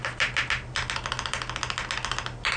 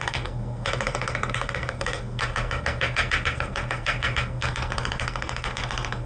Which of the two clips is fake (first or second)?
second